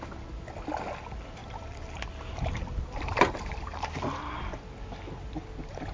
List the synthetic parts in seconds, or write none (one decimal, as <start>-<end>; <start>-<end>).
1.4-4.2